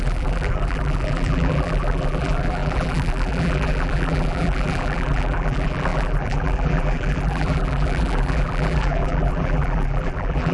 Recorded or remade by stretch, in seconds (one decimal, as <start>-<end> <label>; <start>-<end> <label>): 0.0-10.5 remade